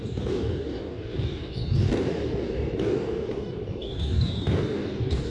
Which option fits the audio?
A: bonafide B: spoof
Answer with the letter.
B